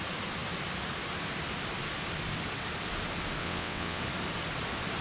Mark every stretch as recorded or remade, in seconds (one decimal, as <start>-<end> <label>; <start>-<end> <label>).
0.0-3.4 recorded; 3.4-4.0 remade; 4.0-5.0 recorded